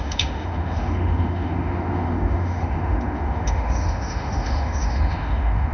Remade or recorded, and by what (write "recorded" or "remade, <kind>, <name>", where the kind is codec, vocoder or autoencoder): remade, autoencoder, DAC-VAE